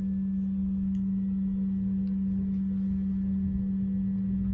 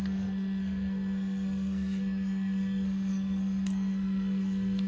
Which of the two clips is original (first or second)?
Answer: first